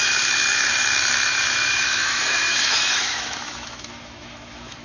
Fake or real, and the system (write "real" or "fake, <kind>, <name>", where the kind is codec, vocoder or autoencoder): fake, autoencoder, DAC-VAE